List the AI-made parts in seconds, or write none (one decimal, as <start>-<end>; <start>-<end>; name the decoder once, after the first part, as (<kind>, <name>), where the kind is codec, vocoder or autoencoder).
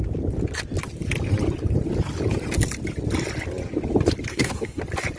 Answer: 4.3-4.8 (codec, SNAC)